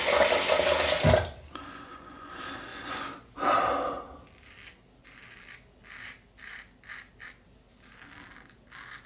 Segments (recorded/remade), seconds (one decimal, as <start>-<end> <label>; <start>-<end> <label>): 0.0-1.5 recorded; 1.5-2.3 remade; 2.3-2.7 recorded; 2.7-3.3 remade; 3.3-9.1 recorded